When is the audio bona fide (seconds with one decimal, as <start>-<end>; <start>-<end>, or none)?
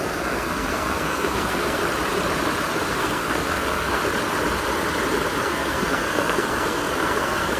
1.8-2.9; 4.0-5.4